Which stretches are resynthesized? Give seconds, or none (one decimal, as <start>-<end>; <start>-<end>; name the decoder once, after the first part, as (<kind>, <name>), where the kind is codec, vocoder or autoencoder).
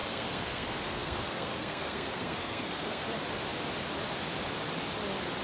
0.0-3.0 (codec, SNAC)